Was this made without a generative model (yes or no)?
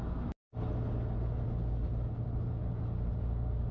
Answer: yes